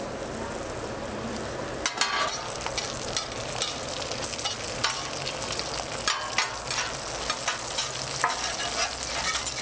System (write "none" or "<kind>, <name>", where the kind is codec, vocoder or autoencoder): none